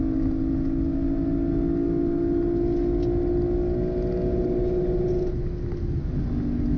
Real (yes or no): yes